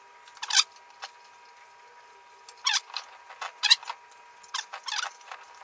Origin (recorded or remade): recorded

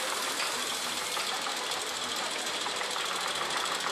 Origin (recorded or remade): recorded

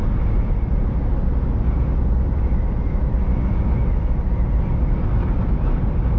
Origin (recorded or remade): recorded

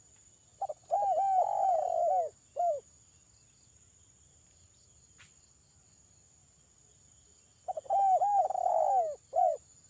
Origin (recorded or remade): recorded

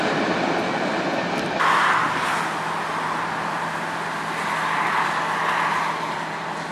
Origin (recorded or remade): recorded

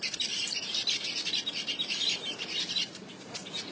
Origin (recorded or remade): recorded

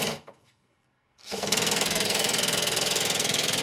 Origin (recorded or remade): remade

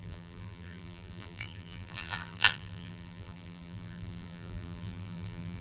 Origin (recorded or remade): remade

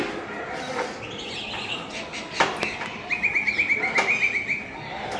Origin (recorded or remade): recorded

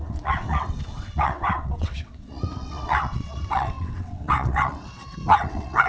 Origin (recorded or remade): remade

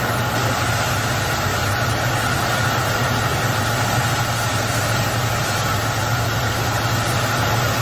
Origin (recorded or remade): recorded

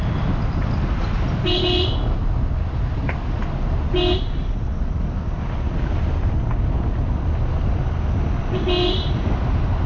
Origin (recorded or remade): recorded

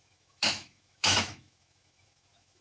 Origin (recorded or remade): remade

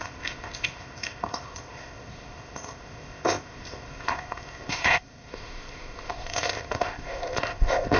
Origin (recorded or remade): remade